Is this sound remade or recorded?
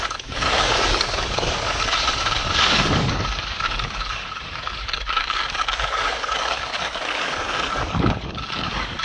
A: remade